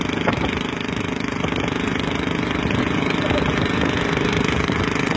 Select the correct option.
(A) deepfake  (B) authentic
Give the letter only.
B